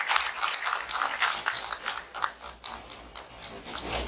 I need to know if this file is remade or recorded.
recorded